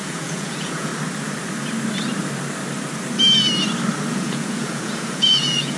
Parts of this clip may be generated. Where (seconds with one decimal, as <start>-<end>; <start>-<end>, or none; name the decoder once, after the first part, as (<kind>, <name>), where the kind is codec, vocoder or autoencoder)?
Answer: 0.0-0.9 (vocoder, Vocos); 4.1-5.8